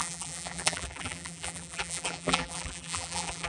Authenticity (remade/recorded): remade